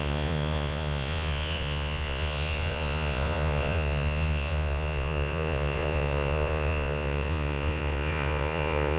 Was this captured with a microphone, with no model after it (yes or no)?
no